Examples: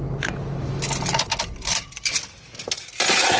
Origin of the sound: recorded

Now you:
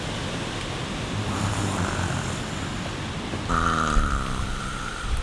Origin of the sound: remade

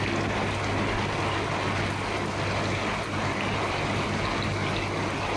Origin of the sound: recorded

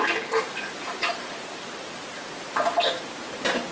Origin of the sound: recorded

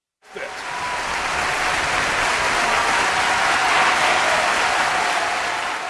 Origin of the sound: recorded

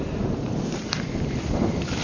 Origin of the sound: recorded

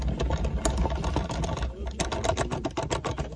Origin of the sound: recorded